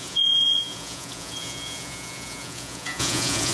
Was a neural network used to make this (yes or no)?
yes